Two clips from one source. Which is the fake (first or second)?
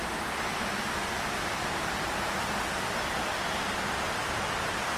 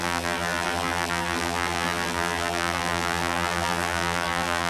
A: second